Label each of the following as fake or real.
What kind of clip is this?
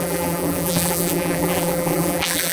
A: fake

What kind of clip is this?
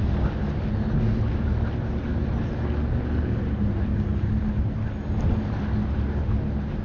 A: real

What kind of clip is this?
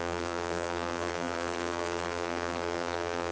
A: fake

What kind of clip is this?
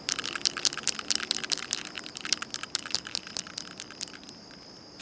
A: real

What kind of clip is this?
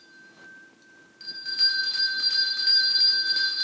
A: real